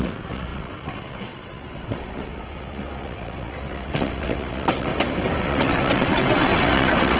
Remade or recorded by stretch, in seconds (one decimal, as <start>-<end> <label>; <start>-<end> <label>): 0.0-4.9 remade; 4.9-5.4 recorded; 5.4-7.2 remade